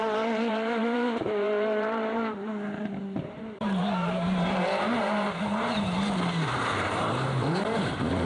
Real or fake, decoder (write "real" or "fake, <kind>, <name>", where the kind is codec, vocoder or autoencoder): fake, vocoder, BigVGAN v2